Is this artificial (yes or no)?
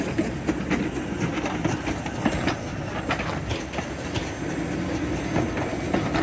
no